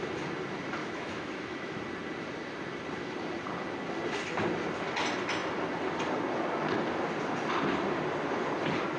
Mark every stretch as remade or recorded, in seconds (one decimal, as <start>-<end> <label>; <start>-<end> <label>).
0.0-0.8 recorded; 0.8-1.8 remade; 1.8-9.0 recorded